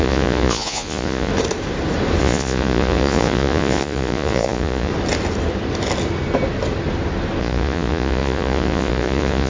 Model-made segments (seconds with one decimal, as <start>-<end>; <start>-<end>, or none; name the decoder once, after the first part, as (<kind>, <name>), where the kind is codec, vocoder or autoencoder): 0.0-1.3 (vocoder, Vocos); 2.2-4.9; 7.4-9.5